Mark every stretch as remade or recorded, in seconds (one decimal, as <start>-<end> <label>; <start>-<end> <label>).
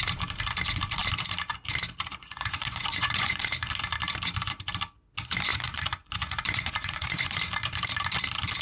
0.0-2.1 recorded; 2.1-3.4 remade; 3.4-5.5 recorded; 5.5-7.4 remade; 7.4-8.6 recorded